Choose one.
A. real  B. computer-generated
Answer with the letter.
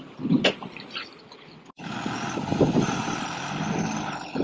A